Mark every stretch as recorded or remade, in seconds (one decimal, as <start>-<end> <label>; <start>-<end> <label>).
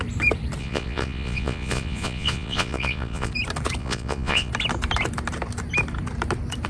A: 0.0-0.6 recorded; 0.6-3.3 remade; 3.3-3.8 recorded; 3.8-4.5 remade; 4.5-6.7 recorded